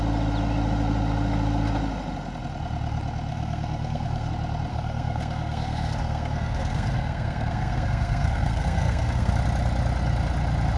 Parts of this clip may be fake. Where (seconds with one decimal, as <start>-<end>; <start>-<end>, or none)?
3.3-4.3; 4.7-9.3